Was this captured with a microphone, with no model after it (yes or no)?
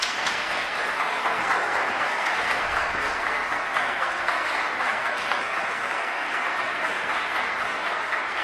no